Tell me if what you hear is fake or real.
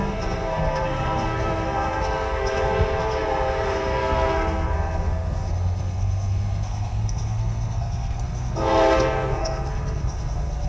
fake